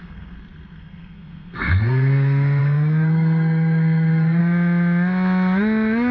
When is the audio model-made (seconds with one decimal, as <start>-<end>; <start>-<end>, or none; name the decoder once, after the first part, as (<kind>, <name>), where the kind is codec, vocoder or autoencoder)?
0.0-4.4 (codec, SNAC)